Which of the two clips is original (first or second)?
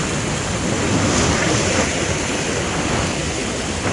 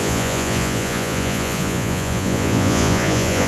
first